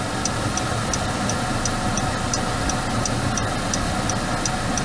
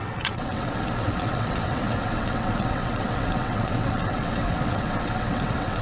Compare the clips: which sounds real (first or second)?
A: first